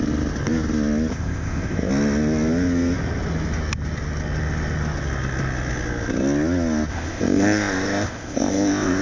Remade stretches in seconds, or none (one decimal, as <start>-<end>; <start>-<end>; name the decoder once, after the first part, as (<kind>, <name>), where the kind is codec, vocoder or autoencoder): 1.1-1.9 (codec, ZipCodec); 6.9-9.0